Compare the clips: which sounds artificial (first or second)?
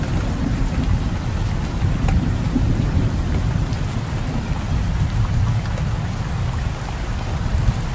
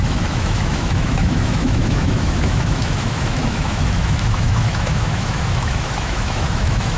second